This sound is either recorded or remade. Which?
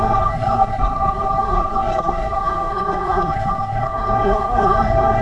remade